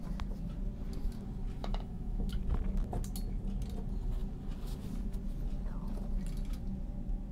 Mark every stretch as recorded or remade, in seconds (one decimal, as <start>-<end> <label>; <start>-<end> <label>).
0.0-1.6 recorded; 1.6-2.3 remade; 2.3-7.3 recorded